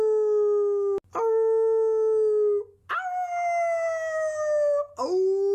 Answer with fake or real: real